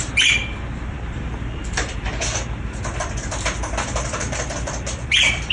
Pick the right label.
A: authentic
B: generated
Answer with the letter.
B